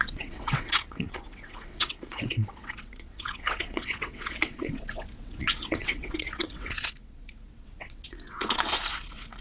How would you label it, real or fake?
fake